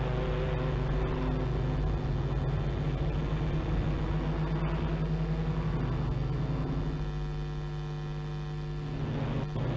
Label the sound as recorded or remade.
recorded